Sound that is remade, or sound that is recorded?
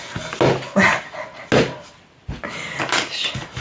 recorded